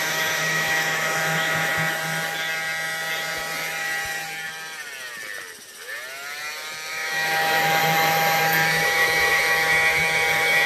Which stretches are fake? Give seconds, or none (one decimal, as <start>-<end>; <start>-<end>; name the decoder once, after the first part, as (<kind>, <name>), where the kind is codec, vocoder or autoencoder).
0.0-1.7 (autoencoder, DAC-VAE); 6.9-10.7